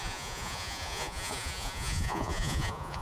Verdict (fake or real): fake